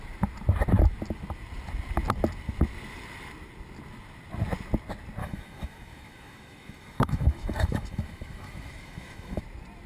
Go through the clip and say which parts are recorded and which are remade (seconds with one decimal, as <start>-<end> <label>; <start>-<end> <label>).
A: 0.0-5.2 recorded; 5.2-9.4 remade; 9.4-9.9 recorded